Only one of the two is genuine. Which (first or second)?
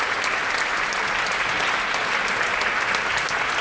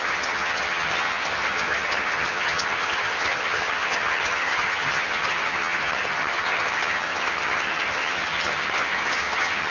first